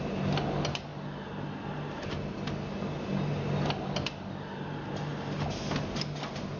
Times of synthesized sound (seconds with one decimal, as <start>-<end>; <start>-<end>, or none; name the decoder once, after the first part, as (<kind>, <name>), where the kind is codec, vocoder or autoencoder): none

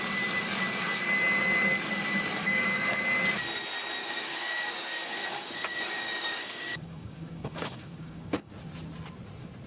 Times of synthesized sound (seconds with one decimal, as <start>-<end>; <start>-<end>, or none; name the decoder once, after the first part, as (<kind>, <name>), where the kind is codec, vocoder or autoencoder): 2.4-3.0 (codec, DAC); 4.0-8.5

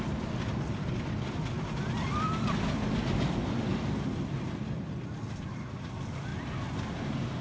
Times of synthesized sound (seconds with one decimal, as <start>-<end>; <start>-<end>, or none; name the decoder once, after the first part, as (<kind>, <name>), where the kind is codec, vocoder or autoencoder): none

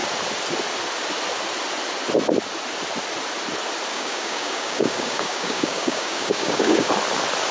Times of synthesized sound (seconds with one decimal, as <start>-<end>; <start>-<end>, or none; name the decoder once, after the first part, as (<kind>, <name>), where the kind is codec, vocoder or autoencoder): 3.9-6.9 (codec, DAC)

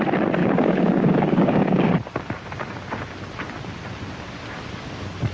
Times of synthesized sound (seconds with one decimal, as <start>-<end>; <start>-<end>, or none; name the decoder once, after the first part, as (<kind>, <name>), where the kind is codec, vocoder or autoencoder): 0.4-1.9 (codec, DAC)

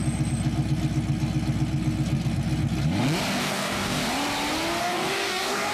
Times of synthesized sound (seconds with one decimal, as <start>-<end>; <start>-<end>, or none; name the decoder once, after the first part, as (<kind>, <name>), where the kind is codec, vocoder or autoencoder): 3.4-4.0 (codec, DAC); 4.8-5.7

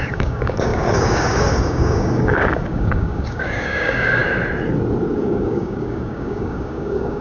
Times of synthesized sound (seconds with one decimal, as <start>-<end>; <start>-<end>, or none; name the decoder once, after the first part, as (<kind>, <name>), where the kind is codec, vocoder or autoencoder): 0.0-4.2 (codec, DAC); 5.2-7.2